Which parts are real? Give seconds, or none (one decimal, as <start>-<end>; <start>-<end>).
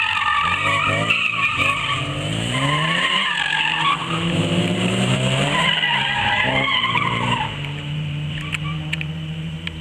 none